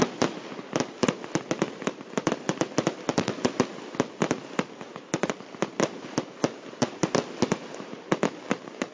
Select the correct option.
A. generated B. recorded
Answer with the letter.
B